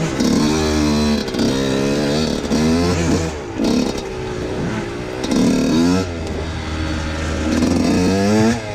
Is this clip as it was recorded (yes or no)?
yes